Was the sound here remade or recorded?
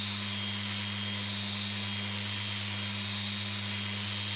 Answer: recorded